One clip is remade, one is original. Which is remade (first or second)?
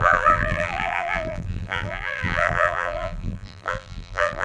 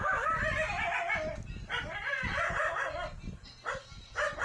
first